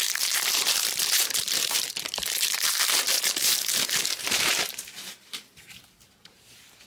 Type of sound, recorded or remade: remade